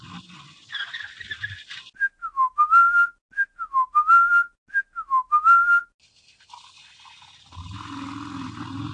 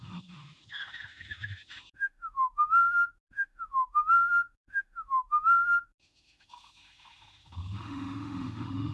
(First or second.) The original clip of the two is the first